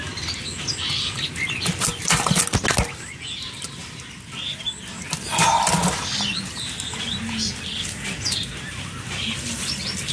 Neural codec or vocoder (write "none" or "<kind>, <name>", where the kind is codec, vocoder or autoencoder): none